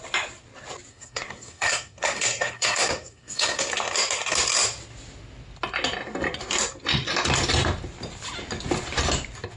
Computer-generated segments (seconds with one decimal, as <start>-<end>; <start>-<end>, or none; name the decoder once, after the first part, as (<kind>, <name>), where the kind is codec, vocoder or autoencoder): 0.9-3.7 (codec, SNAC)